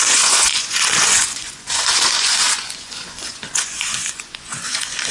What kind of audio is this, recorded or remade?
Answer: remade